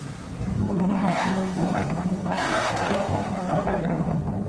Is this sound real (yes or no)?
no